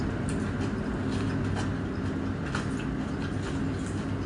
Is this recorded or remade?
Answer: recorded